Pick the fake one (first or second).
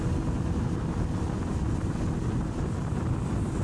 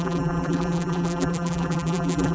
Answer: second